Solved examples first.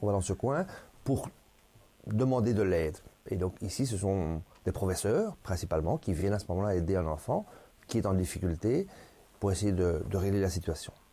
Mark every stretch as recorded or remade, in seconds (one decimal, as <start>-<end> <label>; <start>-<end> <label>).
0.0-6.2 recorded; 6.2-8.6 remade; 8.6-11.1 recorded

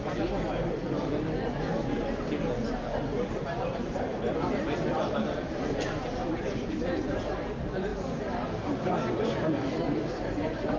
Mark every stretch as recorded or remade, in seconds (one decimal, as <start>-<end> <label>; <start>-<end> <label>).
0.0-3.1 recorded; 3.1-4.2 remade; 4.2-7.9 recorded; 7.9-8.5 remade; 8.5-10.8 recorded

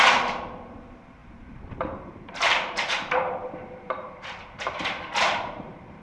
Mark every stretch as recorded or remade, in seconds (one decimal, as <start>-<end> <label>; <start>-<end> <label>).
0.0-6.0 remade